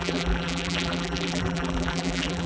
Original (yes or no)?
no